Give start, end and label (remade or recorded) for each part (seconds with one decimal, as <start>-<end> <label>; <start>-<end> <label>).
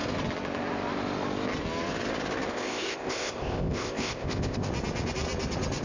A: 0.0-2.5 recorded; 2.5-4.7 remade; 4.7-5.8 recorded